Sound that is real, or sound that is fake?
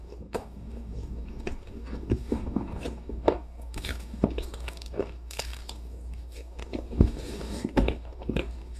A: fake